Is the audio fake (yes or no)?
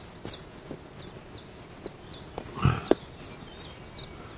no